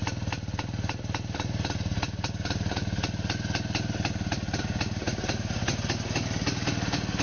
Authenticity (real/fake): real